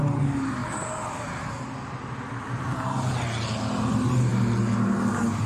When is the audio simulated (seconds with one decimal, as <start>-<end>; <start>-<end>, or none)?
none